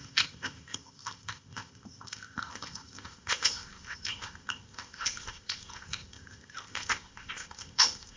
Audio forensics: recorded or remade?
remade